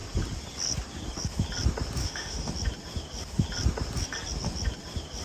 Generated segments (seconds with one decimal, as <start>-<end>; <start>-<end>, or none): 2.0-2.5